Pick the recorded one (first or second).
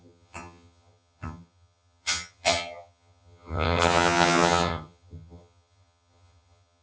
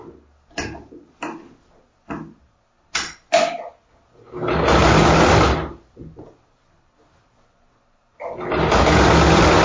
second